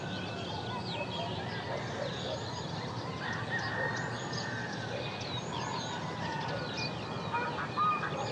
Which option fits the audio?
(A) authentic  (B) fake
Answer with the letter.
A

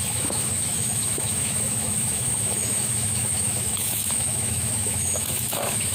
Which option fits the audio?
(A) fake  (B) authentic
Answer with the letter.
A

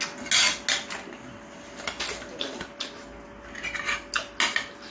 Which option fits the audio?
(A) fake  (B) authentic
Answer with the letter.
B